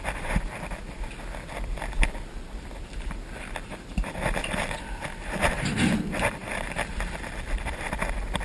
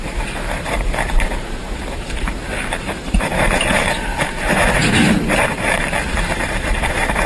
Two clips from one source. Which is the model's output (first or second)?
second